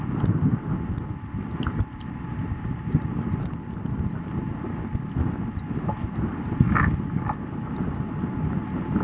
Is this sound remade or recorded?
recorded